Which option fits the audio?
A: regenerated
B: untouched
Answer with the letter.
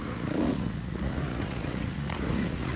A